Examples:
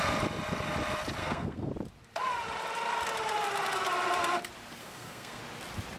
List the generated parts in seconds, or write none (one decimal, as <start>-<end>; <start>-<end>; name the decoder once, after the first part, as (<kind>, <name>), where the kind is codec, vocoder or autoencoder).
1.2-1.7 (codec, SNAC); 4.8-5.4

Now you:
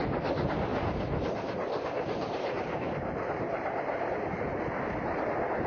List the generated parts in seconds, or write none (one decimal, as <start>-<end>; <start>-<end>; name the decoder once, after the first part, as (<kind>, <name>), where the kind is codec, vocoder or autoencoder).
0.7-4.1 (vocoder, BigVGAN v2)

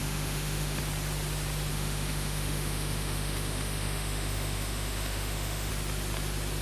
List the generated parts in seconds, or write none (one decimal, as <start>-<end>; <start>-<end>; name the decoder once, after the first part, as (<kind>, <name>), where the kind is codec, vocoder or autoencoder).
0.0-0.8 (autoencoder, DAC-VAE); 1.7-5.7

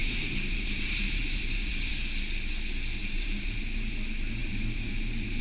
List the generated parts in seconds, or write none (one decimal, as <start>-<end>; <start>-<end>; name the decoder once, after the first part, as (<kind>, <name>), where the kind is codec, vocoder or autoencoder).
0.0-1.9 (vocoder, BigVGAN v2); 3.0-3.9; 4.4-5.4